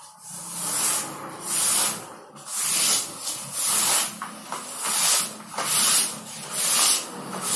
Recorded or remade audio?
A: recorded